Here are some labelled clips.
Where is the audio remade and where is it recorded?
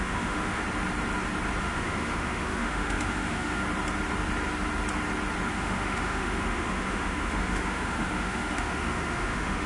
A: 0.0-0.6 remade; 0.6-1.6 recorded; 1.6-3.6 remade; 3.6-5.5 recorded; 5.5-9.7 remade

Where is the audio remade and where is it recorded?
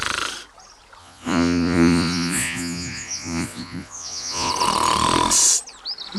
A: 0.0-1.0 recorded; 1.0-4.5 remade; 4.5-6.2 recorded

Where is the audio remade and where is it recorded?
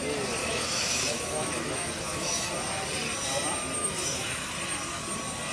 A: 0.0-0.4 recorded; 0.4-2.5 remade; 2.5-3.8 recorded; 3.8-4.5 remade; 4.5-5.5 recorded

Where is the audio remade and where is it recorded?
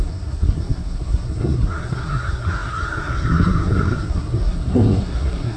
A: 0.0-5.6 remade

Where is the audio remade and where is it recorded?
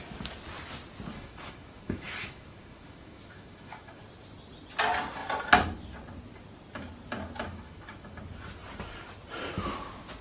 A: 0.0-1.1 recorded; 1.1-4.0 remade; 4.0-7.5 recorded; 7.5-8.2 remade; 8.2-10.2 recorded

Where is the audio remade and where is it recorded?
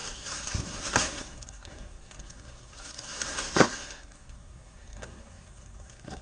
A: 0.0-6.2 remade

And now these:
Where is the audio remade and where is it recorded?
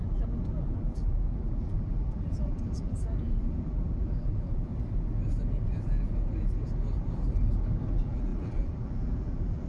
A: 0.0-4.7 remade; 4.7-7.9 recorded; 7.9-9.7 remade